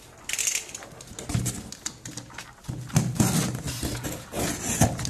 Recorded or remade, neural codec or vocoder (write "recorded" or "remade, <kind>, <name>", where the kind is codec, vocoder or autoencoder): recorded